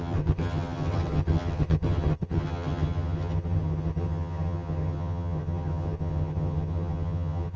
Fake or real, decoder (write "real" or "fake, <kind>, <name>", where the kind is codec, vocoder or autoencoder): fake, vocoder, HiFi-GAN